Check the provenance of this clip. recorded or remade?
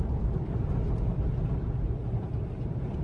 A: remade